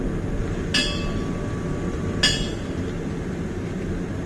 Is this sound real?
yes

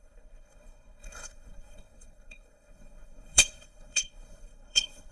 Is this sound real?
no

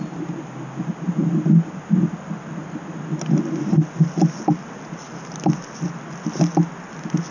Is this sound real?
yes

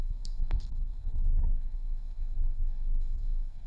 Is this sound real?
no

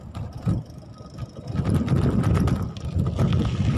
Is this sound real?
yes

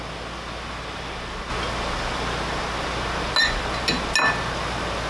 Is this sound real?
yes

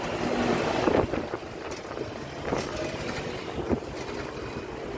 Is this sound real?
yes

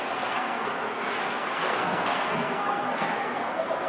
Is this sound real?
no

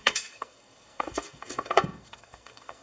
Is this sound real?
no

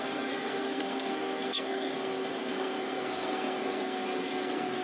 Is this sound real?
no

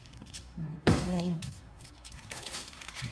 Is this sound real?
no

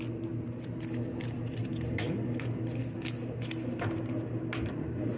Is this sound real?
yes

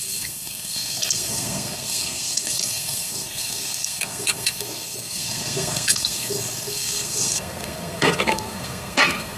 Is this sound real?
no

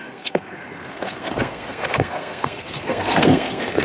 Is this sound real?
no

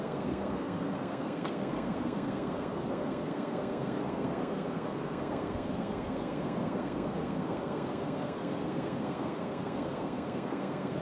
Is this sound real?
no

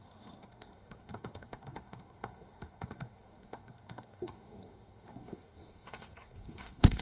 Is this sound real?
no